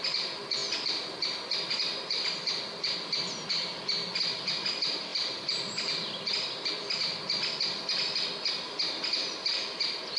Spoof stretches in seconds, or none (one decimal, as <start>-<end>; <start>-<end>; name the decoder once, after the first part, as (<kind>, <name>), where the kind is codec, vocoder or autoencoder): 0.6-2.9 (vocoder, BigVGAN v2); 5.1-6.7